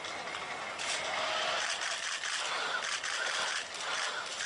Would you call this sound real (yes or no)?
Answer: yes